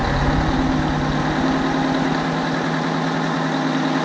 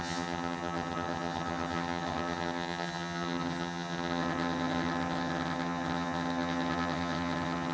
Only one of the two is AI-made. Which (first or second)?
second